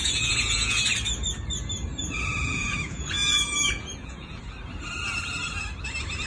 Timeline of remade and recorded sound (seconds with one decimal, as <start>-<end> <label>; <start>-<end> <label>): 0.0-0.8 remade; 0.8-2.0 recorded; 2.0-4.4 remade; 4.4-6.3 recorded